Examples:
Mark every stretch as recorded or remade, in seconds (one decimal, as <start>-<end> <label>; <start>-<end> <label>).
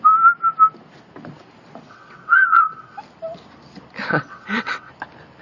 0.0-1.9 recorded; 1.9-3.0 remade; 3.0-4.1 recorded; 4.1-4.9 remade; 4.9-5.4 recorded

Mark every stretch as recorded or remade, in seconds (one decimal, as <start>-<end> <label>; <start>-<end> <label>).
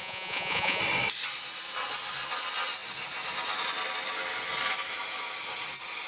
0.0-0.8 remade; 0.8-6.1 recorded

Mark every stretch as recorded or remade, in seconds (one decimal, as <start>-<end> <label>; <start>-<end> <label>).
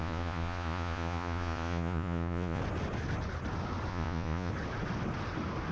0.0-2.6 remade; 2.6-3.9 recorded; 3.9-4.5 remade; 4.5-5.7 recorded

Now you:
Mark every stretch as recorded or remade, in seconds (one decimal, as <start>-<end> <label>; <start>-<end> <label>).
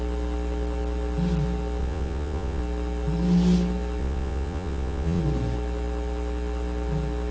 0.0-1.8 recorded; 1.8-2.6 remade; 2.6-4.0 recorded; 4.0-5.2 remade; 5.2-7.3 recorded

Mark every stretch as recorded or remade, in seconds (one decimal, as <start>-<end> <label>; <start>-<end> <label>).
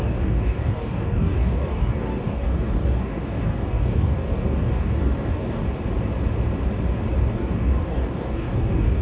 0.0-5.6 remade; 5.6-7.2 recorded; 7.2-9.0 remade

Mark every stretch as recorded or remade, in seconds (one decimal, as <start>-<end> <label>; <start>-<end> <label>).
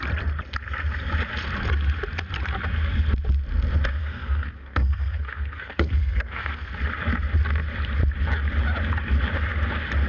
0.0-4.0 recorded; 4.0-6.7 remade; 6.7-10.1 recorded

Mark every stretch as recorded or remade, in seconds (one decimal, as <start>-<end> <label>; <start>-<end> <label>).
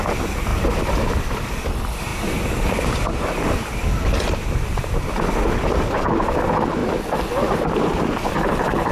0.0-2.1 remade; 2.1-5.0 recorded; 5.0-6.8 remade; 6.8-8.3 recorded; 8.3-8.9 remade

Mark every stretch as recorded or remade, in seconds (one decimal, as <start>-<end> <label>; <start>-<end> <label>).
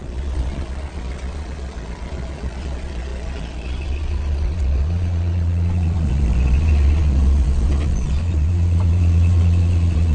0.0-10.1 remade